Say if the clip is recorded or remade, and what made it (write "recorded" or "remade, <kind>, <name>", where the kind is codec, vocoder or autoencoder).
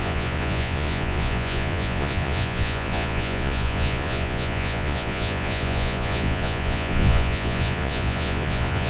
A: remade, vocoder, Vocos